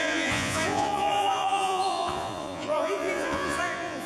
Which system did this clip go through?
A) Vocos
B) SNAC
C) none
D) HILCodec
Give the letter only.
A